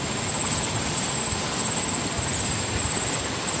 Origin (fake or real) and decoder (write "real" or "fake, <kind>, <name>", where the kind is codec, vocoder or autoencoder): real